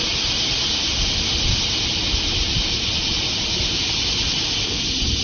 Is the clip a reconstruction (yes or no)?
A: no